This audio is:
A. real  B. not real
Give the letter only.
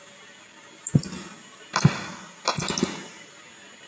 A